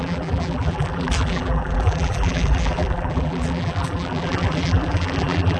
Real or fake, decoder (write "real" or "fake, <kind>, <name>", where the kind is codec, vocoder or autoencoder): fake, vocoder, BigVGAN v2